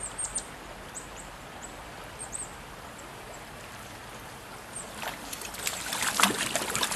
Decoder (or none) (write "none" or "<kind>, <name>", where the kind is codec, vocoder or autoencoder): vocoder, BigVGAN v2